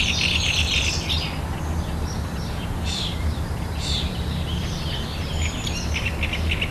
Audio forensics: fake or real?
fake